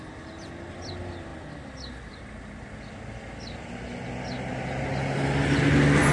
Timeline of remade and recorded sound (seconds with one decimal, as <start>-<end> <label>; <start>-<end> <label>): 0.0-6.1 recorded